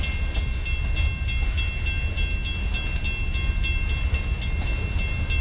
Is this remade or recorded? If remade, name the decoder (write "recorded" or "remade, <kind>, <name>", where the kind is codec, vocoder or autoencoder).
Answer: recorded